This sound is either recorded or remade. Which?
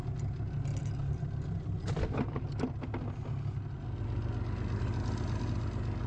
recorded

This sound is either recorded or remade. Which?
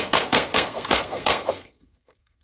remade